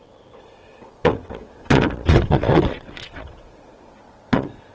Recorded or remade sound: remade